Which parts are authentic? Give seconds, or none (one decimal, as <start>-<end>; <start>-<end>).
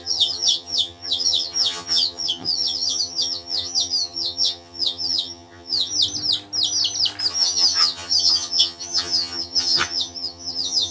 5.9-7.3